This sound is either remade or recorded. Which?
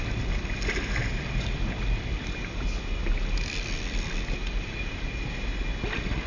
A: recorded